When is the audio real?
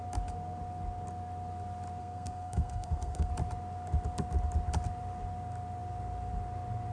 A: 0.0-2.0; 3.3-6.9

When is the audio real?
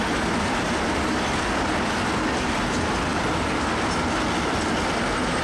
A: 0.0-5.4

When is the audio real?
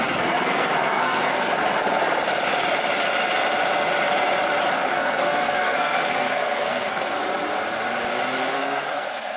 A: 1.6-4.9; 7.2-8.5